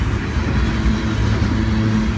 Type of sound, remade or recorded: recorded